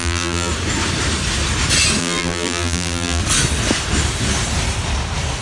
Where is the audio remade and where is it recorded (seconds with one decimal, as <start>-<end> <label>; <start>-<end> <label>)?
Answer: 0.0-0.5 remade; 0.5-2.0 recorded; 2.0-3.2 remade; 3.2-5.4 recorded